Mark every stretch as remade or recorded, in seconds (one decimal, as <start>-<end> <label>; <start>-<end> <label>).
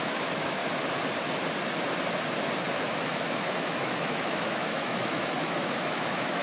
0.0-0.6 remade; 0.6-2.7 recorded; 2.7-6.4 remade